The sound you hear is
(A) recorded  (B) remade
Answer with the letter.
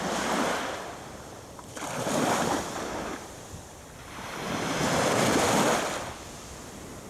A